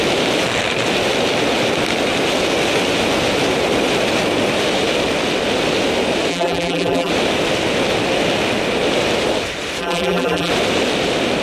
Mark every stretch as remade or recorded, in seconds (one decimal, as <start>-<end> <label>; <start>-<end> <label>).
0.0-6.3 recorded; 6.3-7.1 remade; 7.1-9.8 recorded; 9.8-10.5 remade; 10.5-11.4 recorded